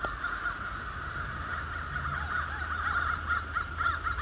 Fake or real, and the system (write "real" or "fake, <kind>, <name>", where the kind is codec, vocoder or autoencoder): real